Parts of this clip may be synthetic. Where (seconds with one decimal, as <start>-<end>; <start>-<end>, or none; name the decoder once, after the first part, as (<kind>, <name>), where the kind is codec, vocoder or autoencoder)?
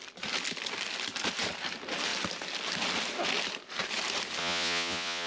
4.4-5.3 (vocoder, Vocos)